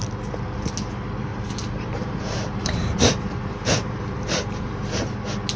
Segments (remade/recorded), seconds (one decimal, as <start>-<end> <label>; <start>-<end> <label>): 0.0-1.3 recorded; 1.3-4.7 remade; 4.7-5.6 recorded